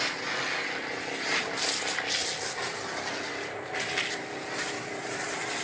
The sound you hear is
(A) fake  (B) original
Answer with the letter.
B